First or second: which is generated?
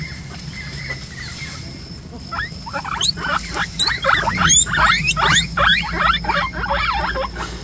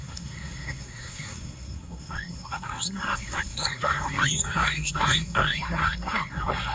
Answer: second